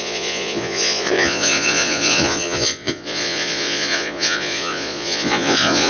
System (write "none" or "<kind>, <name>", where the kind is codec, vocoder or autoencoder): vocoder, Vocos